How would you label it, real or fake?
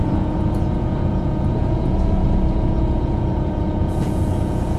fake